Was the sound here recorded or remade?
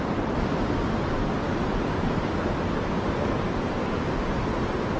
recorded